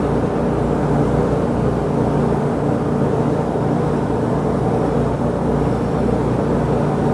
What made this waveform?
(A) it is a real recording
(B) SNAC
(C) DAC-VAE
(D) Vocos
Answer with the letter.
A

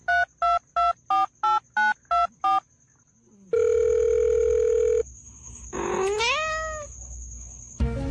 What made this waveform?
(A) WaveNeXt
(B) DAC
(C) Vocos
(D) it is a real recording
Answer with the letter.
D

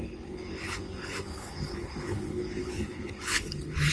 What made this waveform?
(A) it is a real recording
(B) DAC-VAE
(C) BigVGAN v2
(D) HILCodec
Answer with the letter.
D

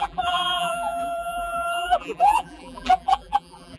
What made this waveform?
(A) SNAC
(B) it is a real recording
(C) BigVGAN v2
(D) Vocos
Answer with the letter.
C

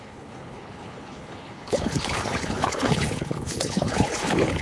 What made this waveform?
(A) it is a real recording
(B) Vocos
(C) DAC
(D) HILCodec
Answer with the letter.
D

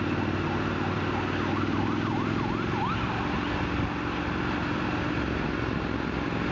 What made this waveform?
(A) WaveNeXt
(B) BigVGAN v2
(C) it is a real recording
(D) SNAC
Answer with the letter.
C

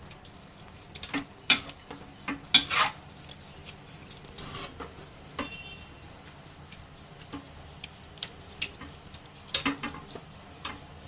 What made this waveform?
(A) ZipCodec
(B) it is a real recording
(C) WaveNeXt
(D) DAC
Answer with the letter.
B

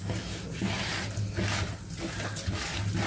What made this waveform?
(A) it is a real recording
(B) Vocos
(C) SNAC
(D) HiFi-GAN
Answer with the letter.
A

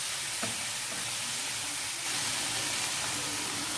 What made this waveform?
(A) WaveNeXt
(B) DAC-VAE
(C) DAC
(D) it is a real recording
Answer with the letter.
D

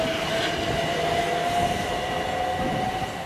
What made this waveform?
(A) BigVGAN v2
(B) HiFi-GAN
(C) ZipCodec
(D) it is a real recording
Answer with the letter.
D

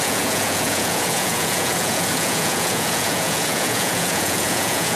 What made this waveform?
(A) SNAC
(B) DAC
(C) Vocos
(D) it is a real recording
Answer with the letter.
C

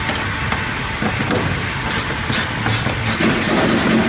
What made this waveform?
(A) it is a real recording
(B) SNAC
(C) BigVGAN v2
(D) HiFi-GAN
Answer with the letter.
A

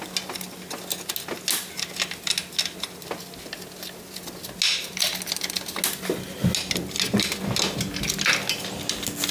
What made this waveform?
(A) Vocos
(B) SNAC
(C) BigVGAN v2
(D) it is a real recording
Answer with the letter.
D